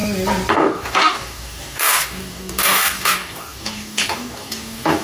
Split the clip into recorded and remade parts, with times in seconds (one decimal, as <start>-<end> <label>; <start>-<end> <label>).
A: 0.0-0.5 recorded; 0.5-5.0 remade